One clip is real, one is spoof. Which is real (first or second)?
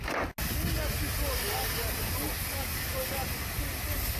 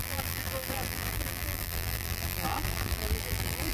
first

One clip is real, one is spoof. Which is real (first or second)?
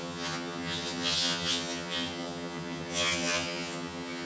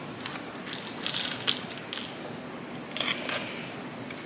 second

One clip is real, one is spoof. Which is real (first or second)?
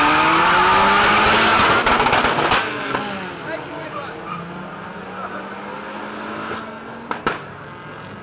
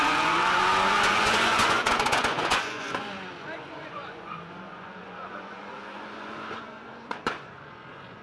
first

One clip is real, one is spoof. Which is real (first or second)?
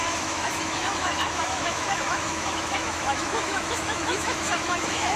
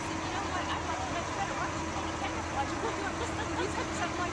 second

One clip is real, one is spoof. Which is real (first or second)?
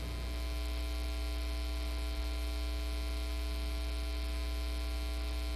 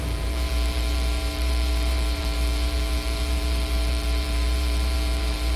first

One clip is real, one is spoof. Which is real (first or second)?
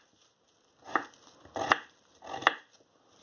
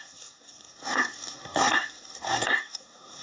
first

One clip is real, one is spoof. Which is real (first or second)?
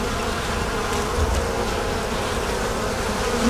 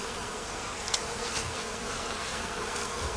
first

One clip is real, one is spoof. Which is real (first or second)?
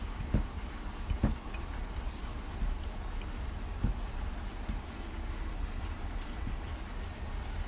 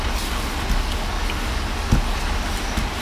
second